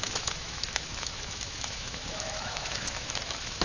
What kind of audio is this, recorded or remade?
remade